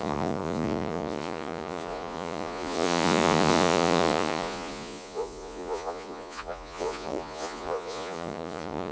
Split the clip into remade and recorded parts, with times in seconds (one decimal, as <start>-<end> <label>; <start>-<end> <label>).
0.0-8.9 remade